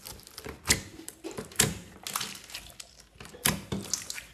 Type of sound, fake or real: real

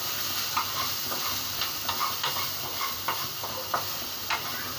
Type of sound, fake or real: real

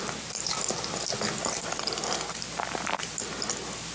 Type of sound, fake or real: real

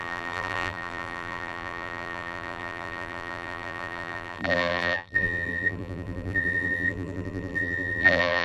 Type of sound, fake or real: fake